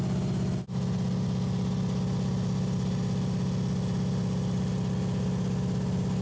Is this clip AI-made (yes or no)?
no